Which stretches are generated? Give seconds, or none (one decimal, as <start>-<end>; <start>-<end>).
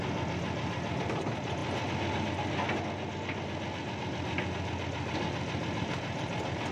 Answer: none